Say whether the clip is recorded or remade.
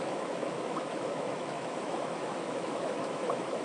remade